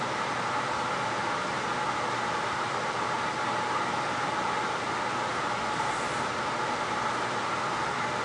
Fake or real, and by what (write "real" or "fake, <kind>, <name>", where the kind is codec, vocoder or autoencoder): real